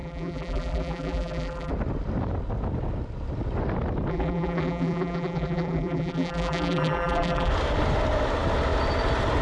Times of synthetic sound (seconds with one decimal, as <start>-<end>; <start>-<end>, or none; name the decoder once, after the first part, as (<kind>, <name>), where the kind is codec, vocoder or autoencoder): 0.0-1.7 (vocoder, BigVGAN v2); 4.1-7.5